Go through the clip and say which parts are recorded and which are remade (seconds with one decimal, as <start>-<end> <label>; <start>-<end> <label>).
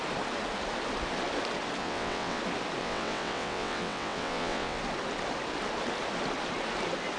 0.0-1.8 recorded; 1.8-2.4 remade; 2.4-2.8 recorded; 2.8-4.8 remade; 4.8-7.2 recorded